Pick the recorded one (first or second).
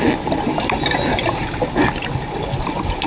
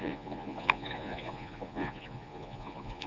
first